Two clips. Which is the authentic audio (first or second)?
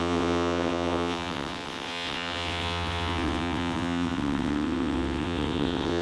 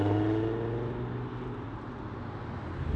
second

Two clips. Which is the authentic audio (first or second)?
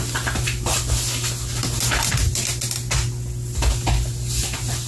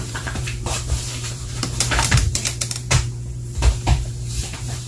first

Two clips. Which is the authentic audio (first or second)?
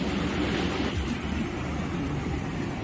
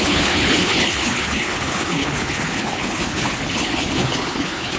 first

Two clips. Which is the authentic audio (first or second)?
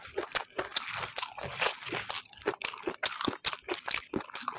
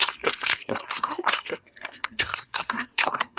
first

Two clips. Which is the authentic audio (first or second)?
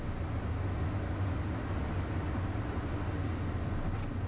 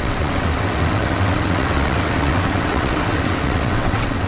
first